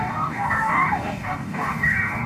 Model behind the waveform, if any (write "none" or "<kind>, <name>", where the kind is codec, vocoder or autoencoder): codec, DAC